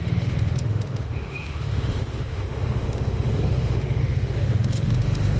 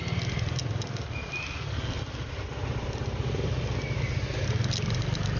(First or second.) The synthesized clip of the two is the first